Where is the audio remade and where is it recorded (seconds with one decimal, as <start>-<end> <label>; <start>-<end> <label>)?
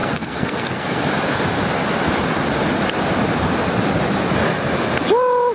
0.0-1.0 remade; 1.0-5.5 recorded